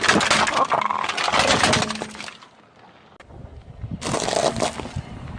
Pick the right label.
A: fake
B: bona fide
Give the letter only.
B